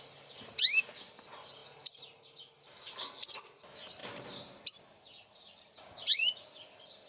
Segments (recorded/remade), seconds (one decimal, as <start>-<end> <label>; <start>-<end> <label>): 0.0-7.1 recorded